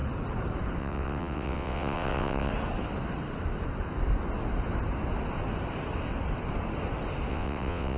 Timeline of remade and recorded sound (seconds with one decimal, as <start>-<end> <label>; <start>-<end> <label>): 0.0-0.8 recorded; 0.8-2.5 remade; 2.5-7.3 recorded; 7.3-8.0 remade